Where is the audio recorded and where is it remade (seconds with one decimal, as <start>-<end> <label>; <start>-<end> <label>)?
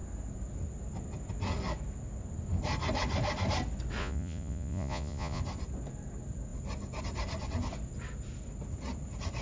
0.0-4.0 recorded; 4.0-5.4 remade; 5.4-9.4 recorded